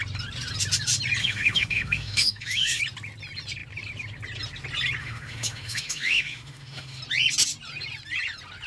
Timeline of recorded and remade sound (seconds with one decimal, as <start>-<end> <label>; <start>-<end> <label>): 0.0-1.2 recorded; 1.2-2.8 remade; 2.8-5.0 recorded; 5.0-7.0 remade; 7.0-8.7 recorded